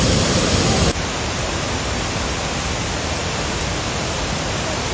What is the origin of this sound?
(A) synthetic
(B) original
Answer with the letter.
B